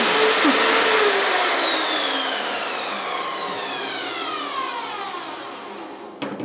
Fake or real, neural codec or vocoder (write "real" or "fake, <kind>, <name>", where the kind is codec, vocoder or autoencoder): real